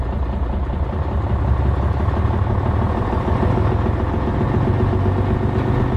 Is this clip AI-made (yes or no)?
no